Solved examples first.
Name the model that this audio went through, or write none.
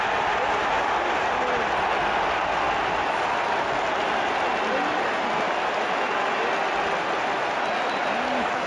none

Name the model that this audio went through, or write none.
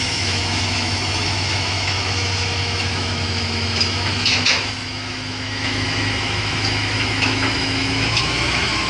autoencoder, DAC-VAE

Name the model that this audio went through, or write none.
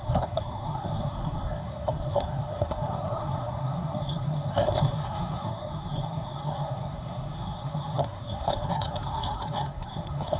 codec, SNAC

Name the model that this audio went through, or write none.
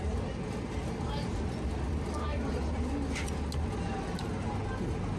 none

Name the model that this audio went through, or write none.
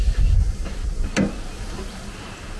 none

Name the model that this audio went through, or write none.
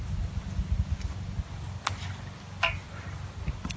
none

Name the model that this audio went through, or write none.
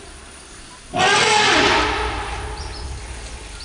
none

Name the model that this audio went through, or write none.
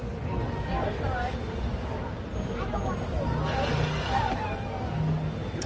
none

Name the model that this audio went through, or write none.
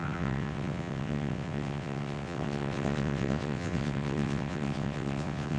vocoder, WaveNeXt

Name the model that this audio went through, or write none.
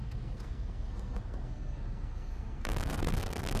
codec, SNAC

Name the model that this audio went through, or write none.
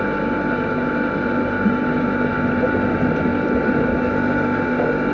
none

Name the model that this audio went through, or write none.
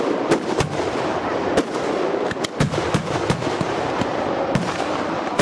none